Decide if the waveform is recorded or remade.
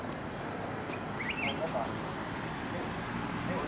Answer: recorded